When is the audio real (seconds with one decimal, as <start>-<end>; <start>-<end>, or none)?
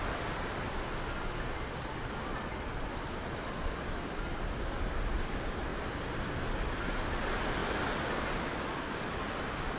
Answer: 0.0-9.8